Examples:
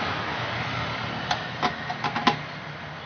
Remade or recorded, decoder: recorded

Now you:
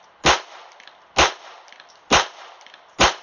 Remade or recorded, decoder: recorded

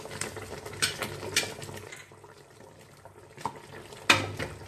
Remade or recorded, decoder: recorded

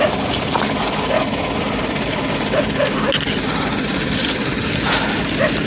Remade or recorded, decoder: recorded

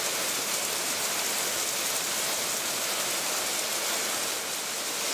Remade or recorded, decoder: recorded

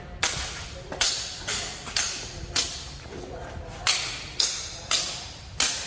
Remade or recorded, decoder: recorded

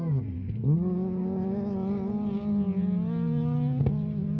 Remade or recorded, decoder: recorded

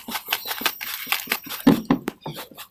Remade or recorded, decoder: remade, vocoder, BigVGAN v2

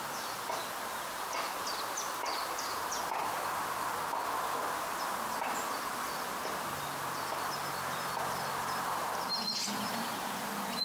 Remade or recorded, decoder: recorded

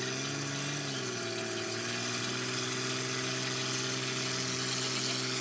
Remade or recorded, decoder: recorded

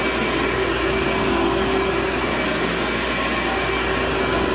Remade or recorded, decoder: recorded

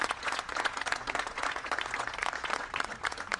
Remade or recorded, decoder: remade, vocoder, Vocos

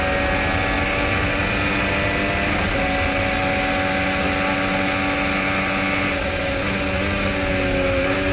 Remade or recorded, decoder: recorded